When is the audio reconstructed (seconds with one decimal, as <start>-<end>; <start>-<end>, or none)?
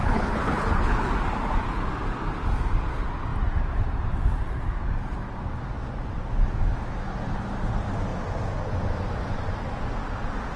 0.0-1.1